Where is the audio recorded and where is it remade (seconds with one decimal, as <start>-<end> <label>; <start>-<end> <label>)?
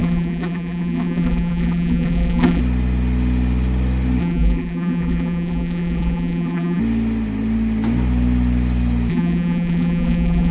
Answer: 0.0-2.6 remade; 2.6-4.2 recorded; 4.2-6.8 remade; 6.8-9.1 recorded; 9.1-10.5 remade